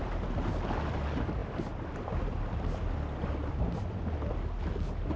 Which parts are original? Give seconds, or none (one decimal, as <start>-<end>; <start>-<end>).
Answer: 0.0-5.2